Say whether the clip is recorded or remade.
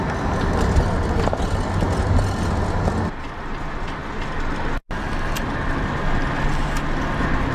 recorded